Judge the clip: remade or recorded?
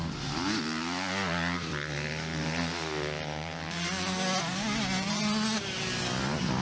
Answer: recorded